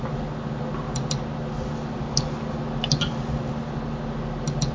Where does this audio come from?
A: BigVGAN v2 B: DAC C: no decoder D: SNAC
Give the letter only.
C